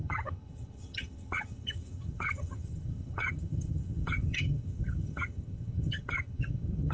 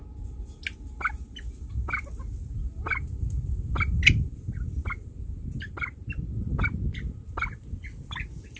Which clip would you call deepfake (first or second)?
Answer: first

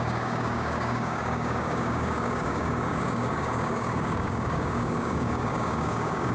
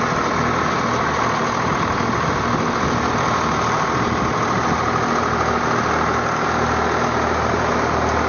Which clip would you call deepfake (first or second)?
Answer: first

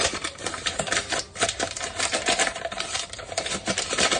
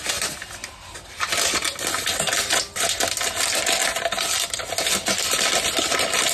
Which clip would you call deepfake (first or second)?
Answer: first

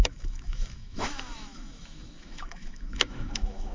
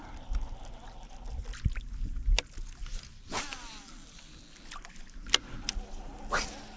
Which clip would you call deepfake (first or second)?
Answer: first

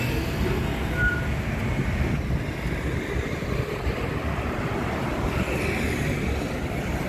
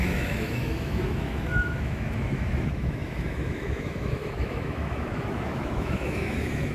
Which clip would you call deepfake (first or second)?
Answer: second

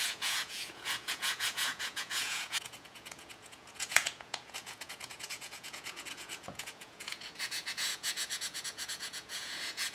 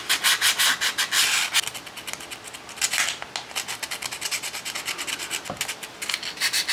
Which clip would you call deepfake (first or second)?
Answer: first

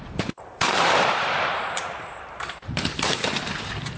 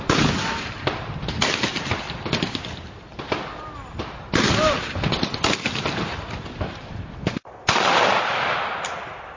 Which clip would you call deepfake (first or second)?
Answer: first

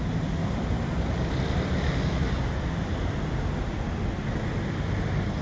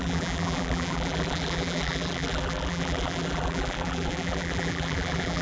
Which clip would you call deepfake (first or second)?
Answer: second